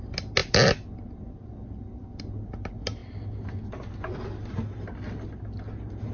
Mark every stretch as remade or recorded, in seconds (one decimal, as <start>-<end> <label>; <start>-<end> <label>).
0.0-6.1 recorded